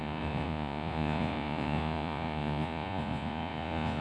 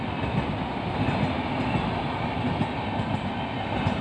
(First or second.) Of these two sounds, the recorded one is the second